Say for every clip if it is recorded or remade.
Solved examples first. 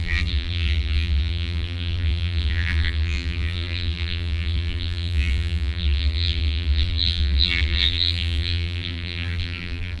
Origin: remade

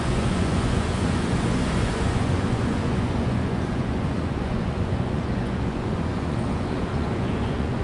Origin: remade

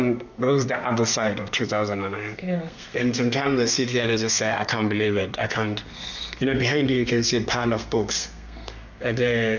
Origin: remade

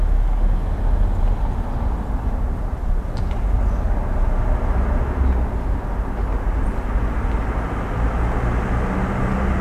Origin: recorded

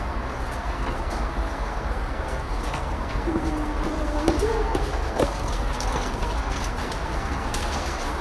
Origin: remade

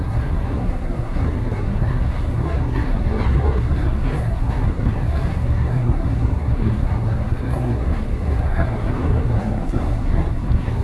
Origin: remade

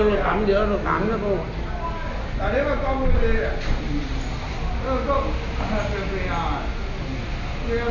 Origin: recorded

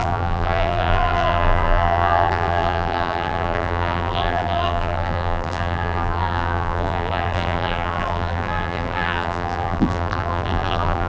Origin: remade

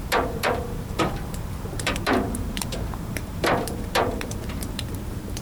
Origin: remade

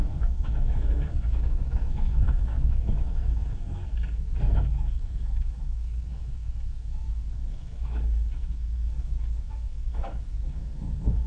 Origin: remade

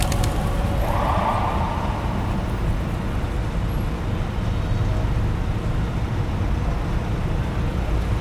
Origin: recorded